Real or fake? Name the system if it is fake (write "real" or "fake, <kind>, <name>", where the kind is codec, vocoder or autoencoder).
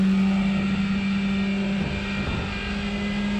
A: real